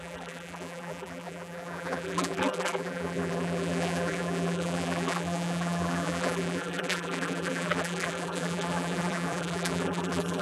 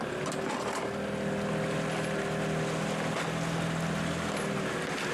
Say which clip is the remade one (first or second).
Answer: first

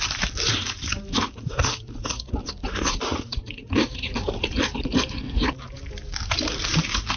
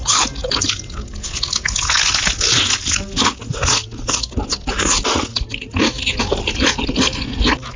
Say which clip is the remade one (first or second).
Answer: first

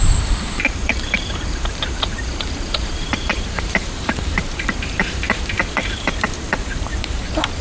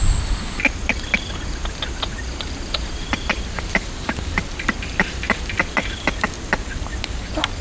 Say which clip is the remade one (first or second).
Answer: first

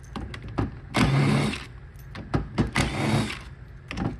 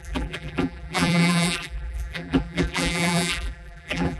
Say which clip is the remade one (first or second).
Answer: second